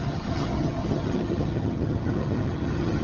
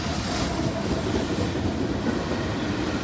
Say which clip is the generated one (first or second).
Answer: first